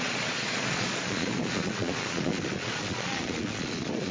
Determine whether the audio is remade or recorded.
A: remade